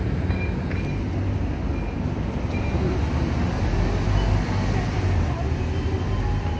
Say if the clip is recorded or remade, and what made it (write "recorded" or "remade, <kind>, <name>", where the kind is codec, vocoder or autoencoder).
recorded